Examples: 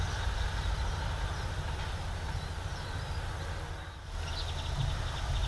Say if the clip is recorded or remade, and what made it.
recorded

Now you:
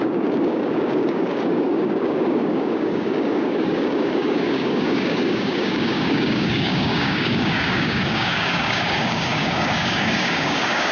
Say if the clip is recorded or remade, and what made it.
remade, codec, DAC